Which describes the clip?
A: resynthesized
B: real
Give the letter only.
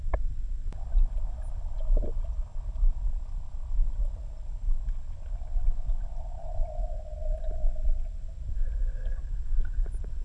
B